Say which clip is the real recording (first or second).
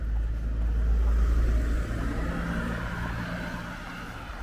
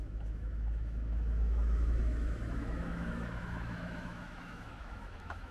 first